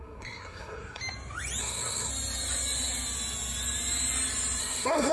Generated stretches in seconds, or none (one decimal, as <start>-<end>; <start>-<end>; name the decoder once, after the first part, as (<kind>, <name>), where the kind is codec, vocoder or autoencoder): 0.0-1.0 (codec, SNAC); 1.6-2.1; 4.6-5.1